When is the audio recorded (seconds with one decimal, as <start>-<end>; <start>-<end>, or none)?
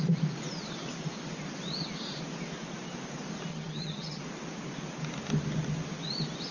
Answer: 0.0-3.5; 4.2-6.5